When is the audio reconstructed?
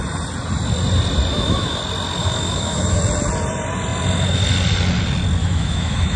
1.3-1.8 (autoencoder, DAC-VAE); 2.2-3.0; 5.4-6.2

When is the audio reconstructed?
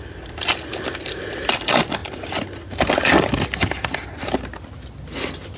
none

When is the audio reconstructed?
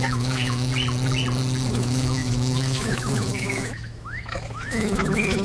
0.0-0.7 (autoencoder, DAC-VAE); 1.7-5.4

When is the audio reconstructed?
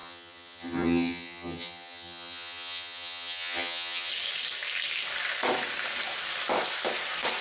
0.0-4.1 (vocoder, HiFi-GAN)